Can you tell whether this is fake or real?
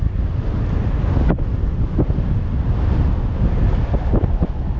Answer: real